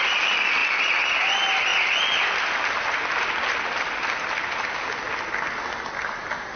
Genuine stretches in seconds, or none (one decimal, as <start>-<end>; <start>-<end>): 0.0-6.6